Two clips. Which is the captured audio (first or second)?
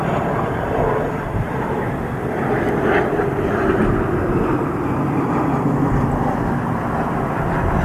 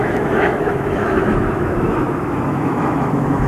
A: first